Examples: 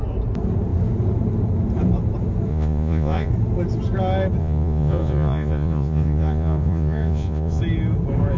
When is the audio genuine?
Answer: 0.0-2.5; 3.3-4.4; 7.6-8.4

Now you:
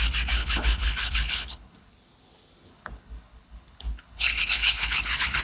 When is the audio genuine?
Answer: 0.0-0.4; 1.9-2.7

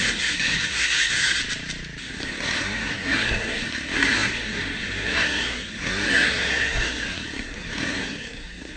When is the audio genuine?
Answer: 1.4-2.0

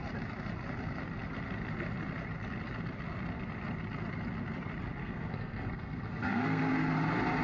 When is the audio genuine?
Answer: 0.0-5.0; 6.6-7.4

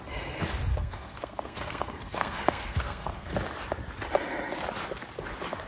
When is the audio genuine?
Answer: 0.0-0.7; 3.3-5.7

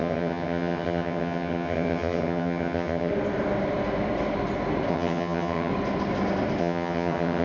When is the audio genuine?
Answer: 3.1-4.9; 5.7-6.6

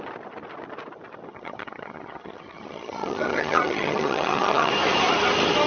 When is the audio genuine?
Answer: 0.0-1.3; 4.7-5.7